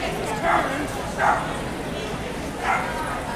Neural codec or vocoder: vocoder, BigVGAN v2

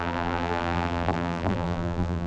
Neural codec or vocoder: vocoder, BigVGAN v2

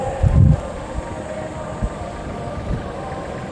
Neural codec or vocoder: none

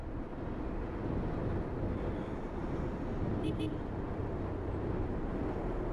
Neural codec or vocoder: none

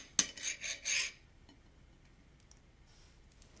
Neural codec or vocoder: none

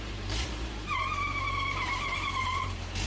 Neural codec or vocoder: vocoder, BigVGAN v2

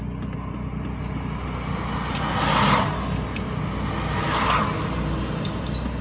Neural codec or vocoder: none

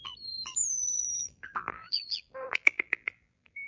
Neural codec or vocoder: vocoder, BigVGAN v2